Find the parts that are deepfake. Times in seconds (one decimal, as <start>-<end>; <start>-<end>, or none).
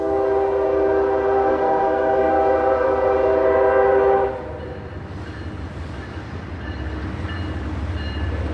1.5-2.3